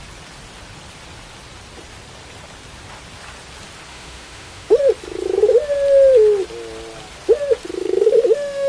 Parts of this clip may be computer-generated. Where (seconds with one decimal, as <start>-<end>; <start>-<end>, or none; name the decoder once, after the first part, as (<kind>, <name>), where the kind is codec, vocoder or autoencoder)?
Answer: 3.9-4.8 (autoencoder, DAC-VAE); 7.8-8.7